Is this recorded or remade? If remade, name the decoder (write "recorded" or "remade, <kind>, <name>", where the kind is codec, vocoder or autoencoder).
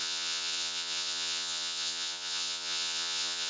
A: remade, vocoder, Vocos